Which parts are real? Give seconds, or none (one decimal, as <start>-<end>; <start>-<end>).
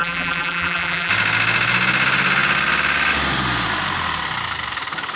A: 1.1-5.2